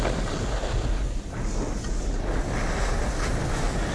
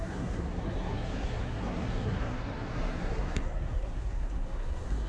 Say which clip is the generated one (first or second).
second